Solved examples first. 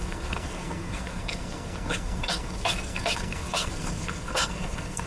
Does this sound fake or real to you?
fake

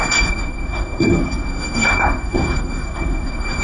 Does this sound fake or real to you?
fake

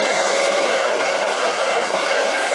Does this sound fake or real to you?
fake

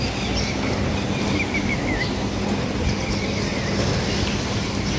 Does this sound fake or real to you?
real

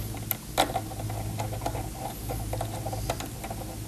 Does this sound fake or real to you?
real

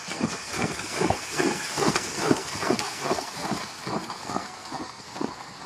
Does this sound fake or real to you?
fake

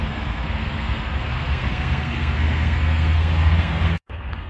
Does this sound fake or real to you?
fake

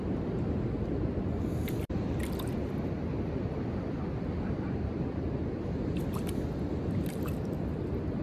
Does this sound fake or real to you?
real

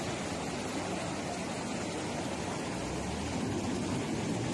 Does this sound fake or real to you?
real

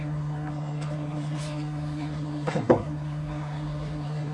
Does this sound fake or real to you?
fake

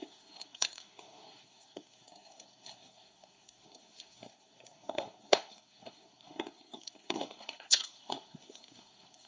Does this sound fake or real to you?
fake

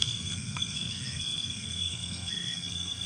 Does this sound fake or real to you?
fake